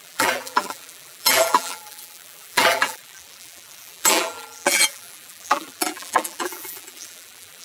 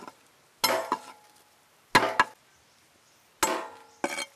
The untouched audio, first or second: second